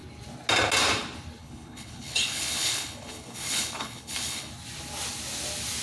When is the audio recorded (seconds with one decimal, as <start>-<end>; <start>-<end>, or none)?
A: 0.0-1.4; 4.5-5.8